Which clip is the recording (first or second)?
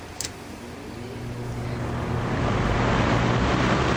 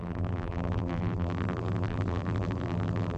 first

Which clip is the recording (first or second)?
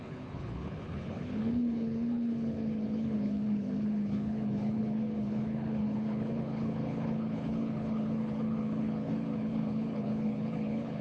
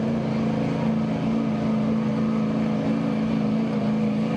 second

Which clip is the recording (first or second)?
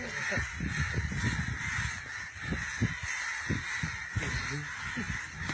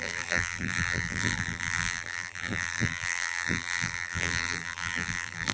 first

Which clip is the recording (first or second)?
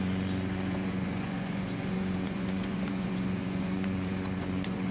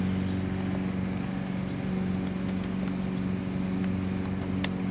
second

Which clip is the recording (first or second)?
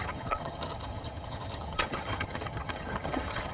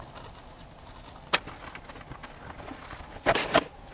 second